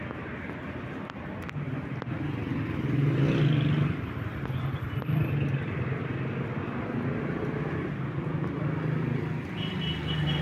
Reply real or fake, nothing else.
real